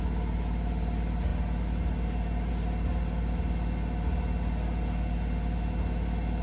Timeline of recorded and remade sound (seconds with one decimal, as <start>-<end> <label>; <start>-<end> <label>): 0.0-6.4 recorded